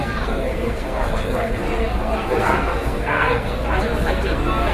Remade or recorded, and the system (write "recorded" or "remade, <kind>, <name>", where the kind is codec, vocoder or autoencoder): remade, codec, SNAC